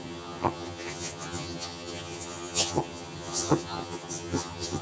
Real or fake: fake